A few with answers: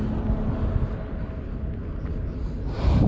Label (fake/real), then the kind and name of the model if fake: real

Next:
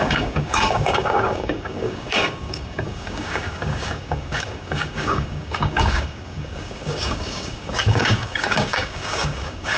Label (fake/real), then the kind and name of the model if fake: fake, codec, DAC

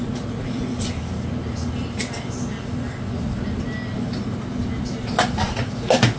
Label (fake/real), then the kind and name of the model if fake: real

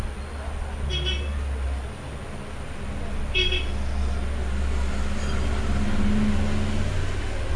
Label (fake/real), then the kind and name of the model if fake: real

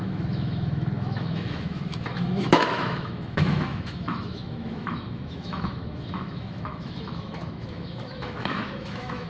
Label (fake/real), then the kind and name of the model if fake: fake, autoencoder, DAC-VAE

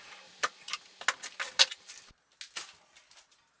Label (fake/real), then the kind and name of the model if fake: real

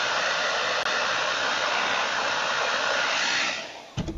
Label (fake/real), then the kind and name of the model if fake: real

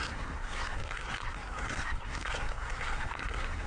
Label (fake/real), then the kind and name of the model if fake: fake, codec, SNAC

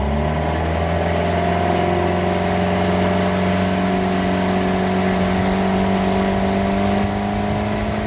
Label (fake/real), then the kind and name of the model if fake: real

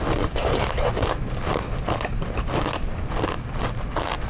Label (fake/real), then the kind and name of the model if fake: real